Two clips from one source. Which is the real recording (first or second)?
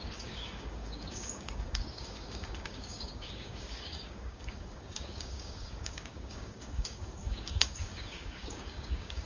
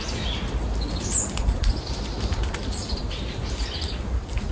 second